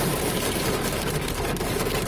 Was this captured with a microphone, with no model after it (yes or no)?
no